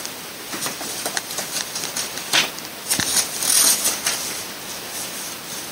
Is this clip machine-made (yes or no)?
no